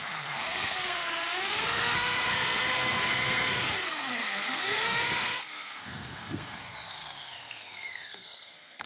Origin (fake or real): fake